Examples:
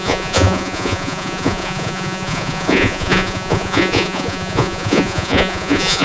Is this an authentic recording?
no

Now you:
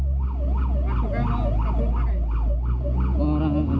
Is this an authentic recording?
yes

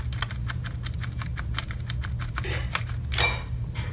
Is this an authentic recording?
yes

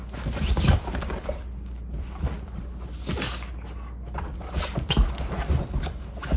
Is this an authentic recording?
yes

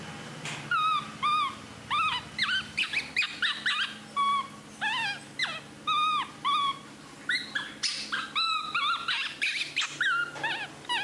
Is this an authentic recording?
yes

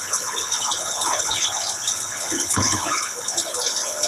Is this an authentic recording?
no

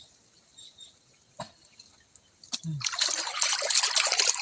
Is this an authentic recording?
yes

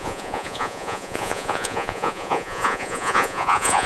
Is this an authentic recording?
no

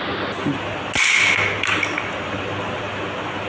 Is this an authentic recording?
yes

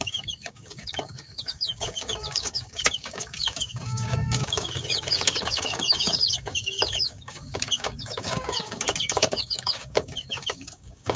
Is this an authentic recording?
no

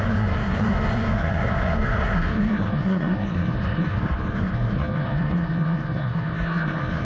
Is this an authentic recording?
no